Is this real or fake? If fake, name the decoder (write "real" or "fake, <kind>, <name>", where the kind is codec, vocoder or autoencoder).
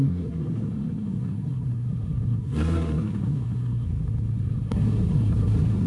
fake, codec, SNAC